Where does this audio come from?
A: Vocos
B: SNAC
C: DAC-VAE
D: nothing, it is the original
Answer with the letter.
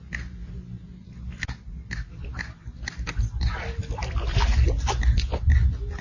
D